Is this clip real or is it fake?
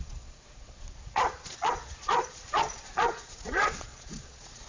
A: fake